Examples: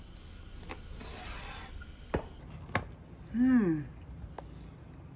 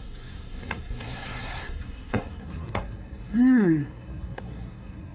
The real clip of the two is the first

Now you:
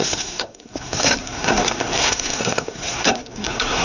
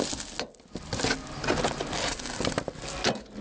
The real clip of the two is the second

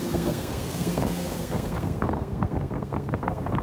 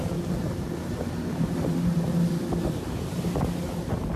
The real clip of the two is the second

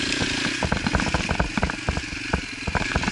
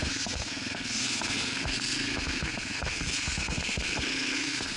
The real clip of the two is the first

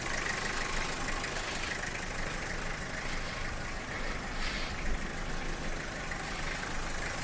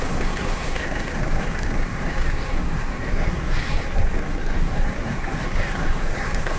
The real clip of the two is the first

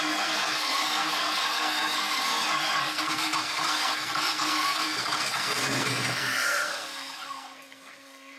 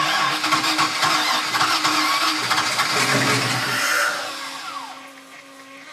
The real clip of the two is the second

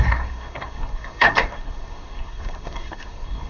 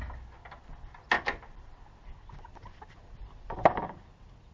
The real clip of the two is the second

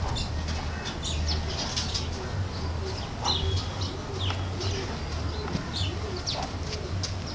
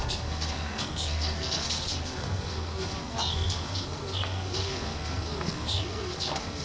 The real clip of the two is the first